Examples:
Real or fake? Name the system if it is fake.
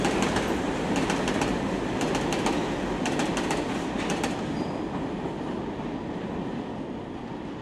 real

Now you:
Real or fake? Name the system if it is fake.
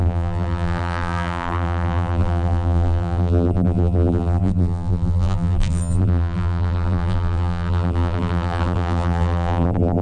fake, vocoder, BigVGAN v2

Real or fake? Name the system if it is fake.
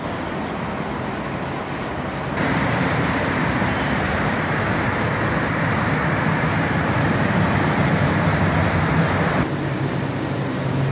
fake, vocoder, BigVGAN v2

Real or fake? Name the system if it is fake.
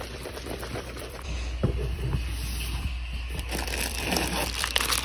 fake, vocoder, BigVGAN v2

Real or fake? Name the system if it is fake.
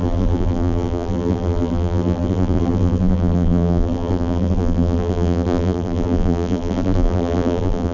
fake, vocoder, BigVGAN v2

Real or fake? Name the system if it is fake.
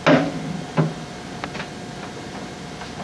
real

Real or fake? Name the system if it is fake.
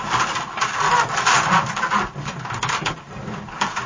fake, vocoder, BigVGAN v2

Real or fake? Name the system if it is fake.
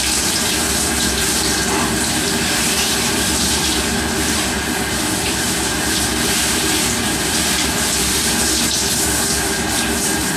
fake, vocoder, BigVGAN v2